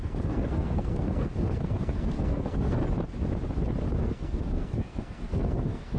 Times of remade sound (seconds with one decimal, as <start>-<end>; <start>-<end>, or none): 0.0-2.8; 4.0-6.0